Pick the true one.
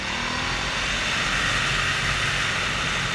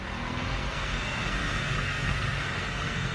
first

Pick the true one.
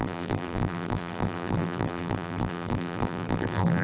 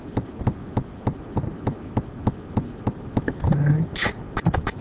second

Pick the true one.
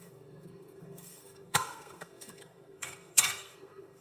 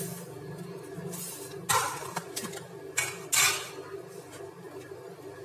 second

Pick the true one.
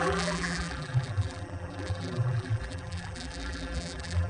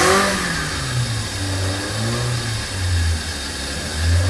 second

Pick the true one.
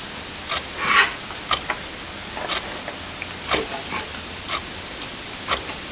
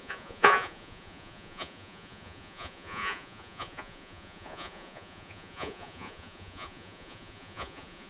first